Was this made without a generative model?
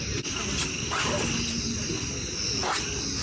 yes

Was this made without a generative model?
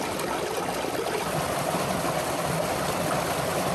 yes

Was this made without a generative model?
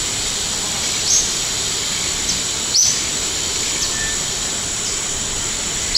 yes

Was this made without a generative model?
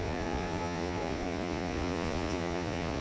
no